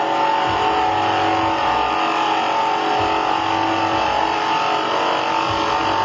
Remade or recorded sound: recorded